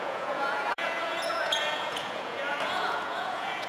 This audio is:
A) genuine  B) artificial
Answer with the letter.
B